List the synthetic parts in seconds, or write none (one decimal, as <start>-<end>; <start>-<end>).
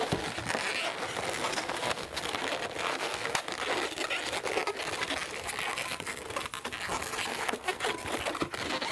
1.5-2.2; 2.9-3.4; 7.3-7.8